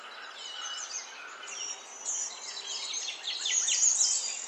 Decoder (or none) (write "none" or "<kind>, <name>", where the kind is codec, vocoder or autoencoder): none